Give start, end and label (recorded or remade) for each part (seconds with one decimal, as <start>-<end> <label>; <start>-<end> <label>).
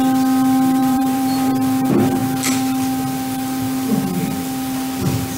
0.0-0.8 recorded; 0.8-1.5 remade; 1.5-5.4 recorded